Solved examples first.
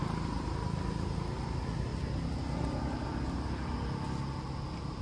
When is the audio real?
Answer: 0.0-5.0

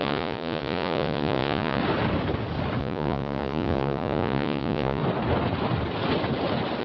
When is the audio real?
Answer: 1.8-2.8; 5.0-6.8

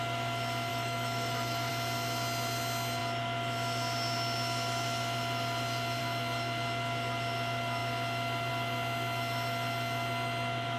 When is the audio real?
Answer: 0.0-0.7; 1.7-10.8

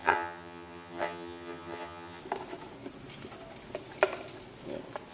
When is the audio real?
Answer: 2.2-5.1